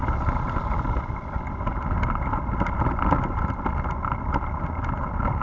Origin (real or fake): real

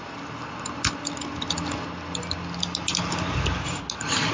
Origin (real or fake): real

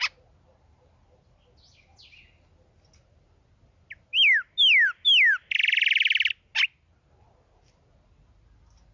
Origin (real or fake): real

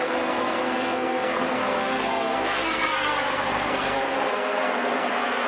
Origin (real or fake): fake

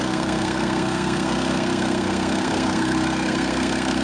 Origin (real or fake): fake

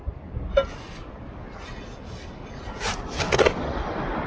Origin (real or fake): real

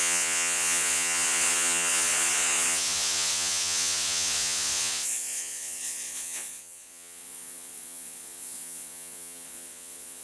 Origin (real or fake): fake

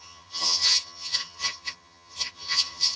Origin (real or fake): fake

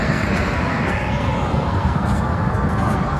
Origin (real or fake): fake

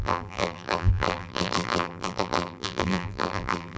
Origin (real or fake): fake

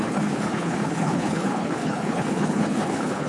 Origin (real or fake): fake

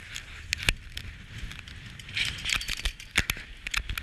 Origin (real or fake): real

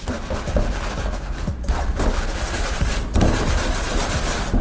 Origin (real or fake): real